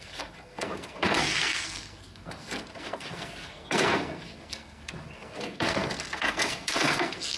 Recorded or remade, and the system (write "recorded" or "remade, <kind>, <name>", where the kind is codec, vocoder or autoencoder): remade, codec, SNAC